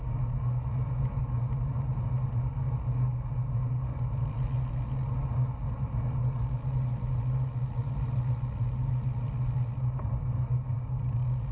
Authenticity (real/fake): real